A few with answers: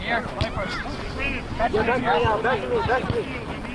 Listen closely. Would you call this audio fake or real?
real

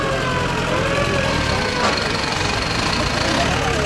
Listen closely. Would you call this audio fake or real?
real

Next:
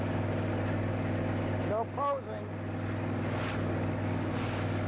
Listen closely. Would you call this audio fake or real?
real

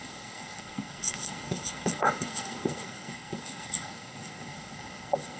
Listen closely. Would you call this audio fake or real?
fake